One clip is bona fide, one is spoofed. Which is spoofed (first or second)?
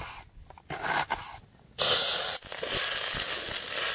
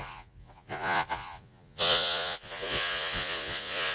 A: second